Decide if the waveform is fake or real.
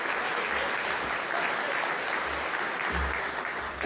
real